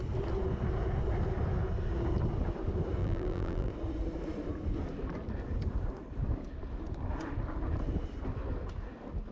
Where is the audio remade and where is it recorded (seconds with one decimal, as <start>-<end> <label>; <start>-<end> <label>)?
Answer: 0.0-3.0 recorded; 3.0-3.7 remade; 3.7-9.3 recorded